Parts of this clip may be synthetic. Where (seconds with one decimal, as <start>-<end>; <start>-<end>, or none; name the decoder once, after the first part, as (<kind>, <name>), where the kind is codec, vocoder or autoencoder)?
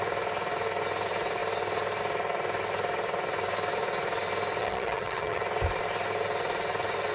4.6-5.4 (vocoder, HiFi-GAN)